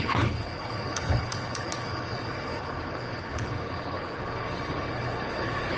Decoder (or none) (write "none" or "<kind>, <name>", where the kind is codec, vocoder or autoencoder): codec, HILCodec